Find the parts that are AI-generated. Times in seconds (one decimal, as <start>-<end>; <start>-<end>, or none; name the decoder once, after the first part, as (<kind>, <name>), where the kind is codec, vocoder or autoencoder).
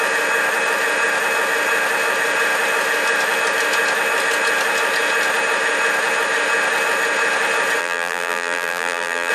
7.8-9.3 (vocoder, BigVGAN v2)